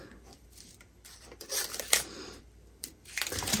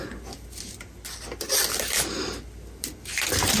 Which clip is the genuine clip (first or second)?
second